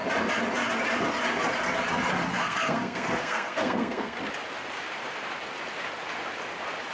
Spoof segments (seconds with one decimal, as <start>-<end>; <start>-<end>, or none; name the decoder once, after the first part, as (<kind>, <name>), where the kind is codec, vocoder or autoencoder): 2.3-4.2 (codec, SNAC)

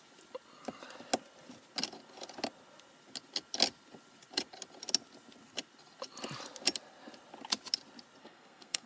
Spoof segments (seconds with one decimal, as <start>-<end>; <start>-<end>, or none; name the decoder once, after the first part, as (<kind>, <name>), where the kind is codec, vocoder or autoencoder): 8.2-8.9 (codec, SNAC)

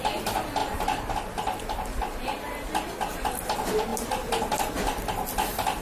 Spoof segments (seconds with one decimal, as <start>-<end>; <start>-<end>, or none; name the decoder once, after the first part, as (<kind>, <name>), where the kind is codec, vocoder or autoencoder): none

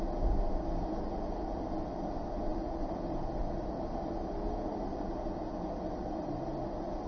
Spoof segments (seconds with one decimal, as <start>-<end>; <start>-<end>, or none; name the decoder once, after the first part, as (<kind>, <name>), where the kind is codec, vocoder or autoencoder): none

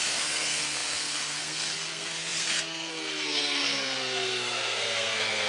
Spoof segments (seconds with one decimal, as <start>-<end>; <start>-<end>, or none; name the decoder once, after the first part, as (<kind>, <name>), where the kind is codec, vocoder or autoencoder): 0.0-5.5 (codec, SNAC)

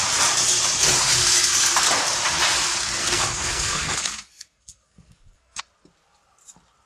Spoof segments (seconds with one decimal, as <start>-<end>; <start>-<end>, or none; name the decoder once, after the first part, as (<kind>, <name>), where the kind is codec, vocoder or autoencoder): 1.2-1.9 (codec, SNAC); 3.0-5.6

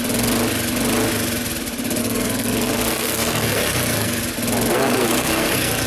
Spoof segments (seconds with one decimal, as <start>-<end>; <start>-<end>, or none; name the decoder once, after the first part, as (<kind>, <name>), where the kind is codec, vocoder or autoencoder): 2.0-4.2 (codec, SNAC); 4.7-5.9